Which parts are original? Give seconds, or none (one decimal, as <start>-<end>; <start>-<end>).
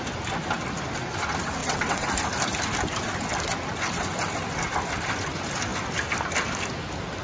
0.0-1.6; 2.1-7.2